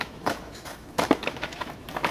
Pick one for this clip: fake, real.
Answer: fake